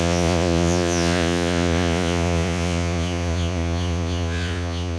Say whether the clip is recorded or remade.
remade